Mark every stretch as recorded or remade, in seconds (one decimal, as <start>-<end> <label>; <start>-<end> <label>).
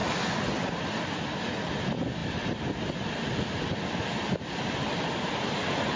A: 0.0-6.0 recorded